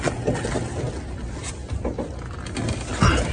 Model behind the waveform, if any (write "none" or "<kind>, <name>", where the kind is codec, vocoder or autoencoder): none